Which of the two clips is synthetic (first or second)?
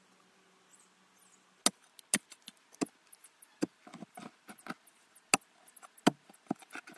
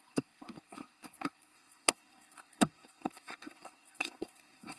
second